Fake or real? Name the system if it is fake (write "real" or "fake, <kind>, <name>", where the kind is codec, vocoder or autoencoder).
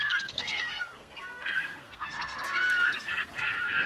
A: fake, codec, SNAC